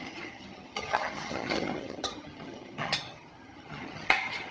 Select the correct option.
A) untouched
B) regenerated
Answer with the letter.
B